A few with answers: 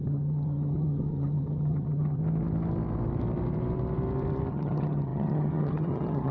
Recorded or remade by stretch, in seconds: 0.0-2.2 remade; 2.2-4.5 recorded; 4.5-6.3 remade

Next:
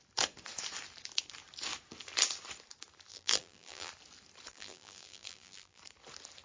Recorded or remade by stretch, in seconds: 0.0-3.1 recorded; 3.1-3.9 remade; 3.9-4.5 recorded; 4.5-5.8 remade; 5.8-6.4 recorded

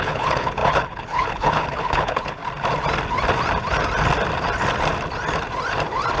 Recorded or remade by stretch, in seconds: 0.0-2.4 remade; 2.4-6.2 recorded

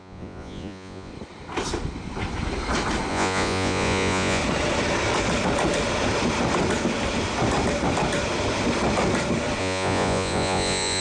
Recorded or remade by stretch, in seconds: 0.0-1.1 remade; 1.1-3.1 recorded; 3.1-4.4 remade; 4.4-9.6 recorded; 9.6-11.0 remade

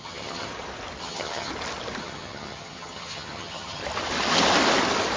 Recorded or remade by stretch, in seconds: 0.0-0.5 remade; 0.5-1.0 recorded; 1.0-1.5 remade; 1.5-2.0 recorded; 2.0-3.8 remade; 3.8-5.2 recorded

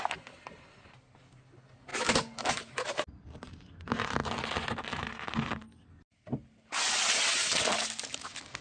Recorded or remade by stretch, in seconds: 0.0-8.6 recorded

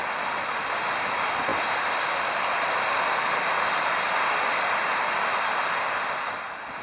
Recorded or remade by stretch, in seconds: 0.0-6.8 recorded